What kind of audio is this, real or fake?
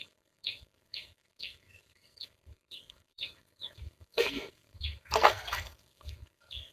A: fake